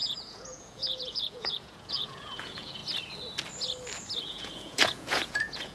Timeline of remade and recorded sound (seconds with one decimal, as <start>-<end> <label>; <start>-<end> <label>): 0.0-2.8 remade; 2.8-4.2 recorded; 4.2-5.7 remade